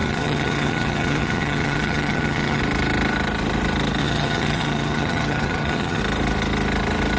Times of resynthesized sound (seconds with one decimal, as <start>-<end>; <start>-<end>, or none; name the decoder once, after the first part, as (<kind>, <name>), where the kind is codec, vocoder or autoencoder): 0.0-2.6 (vocoder, HiFi-GAN); 4.0-6.0